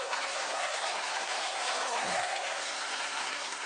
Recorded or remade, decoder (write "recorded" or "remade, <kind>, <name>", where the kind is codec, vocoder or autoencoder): remade, codec, SNAC